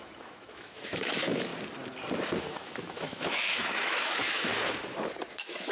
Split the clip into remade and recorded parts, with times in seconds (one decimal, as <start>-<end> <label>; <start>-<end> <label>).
0.0-1.5 remade; 1.5-2.4 recorded; 2.4-4.5 remade; 4.5-5.3 recorded; 5.3-5.7 remade